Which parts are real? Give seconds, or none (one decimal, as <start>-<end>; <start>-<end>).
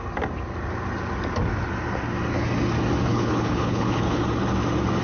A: 0.0-3.1; 4.2-5.0